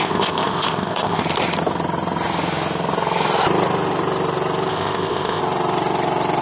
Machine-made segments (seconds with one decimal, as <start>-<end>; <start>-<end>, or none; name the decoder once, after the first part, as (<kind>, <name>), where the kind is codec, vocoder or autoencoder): 0.0-1.2 (codec, ZipCodec); 4.7-5.4